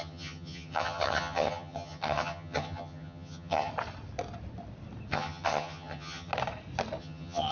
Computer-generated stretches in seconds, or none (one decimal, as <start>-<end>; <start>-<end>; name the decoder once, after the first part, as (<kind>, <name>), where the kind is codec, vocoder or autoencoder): 0.0-3.7 (vocoder, HiFi-GAN); 5.1-6.3; 7.0-7.5